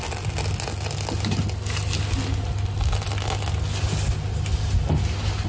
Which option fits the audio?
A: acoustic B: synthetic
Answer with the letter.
A